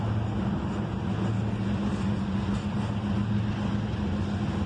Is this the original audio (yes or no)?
yes